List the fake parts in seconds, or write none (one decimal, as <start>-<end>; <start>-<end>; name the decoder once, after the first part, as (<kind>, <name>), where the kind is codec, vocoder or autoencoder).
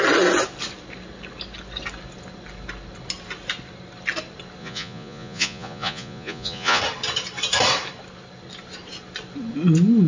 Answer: 4.6-6.8 (vocoder, Vocos)